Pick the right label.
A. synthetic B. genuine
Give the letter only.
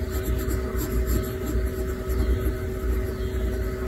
B